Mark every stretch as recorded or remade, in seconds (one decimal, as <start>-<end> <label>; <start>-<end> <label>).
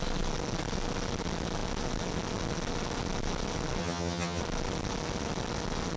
0.0-3.8 recorded; 3.8-4.4 remade; 4.4-6.0 recorded